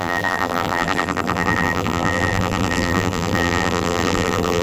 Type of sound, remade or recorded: remade